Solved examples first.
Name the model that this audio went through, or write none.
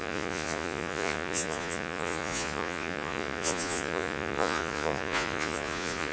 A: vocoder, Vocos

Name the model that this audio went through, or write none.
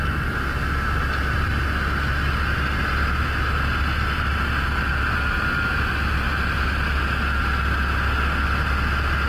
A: none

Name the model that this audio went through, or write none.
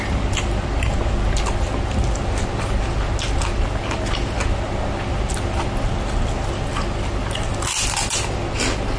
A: none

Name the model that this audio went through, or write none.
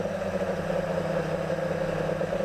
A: none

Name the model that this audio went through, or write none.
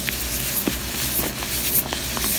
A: none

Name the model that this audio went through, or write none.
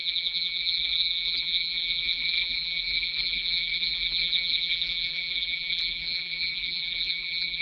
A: vocoder, BigVGAN v2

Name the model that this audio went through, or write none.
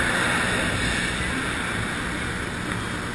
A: none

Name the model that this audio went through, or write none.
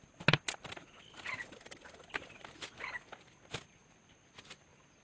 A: none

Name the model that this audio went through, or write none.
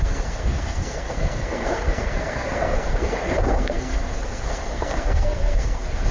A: codec, SNAC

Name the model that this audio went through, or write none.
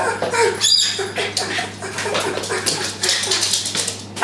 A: none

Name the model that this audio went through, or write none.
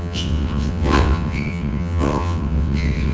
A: vocoder, WaveNeXt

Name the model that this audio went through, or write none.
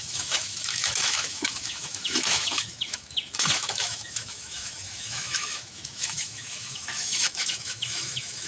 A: autoencoder, DAC-VAE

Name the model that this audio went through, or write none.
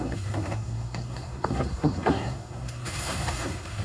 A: codec, SNAC